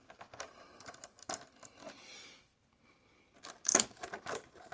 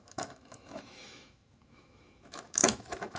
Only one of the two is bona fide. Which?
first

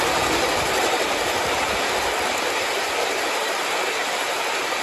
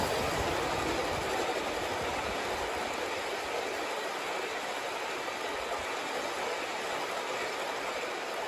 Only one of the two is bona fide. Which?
second